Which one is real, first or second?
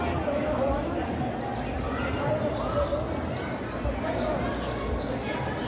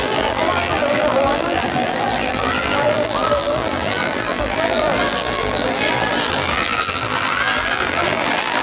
first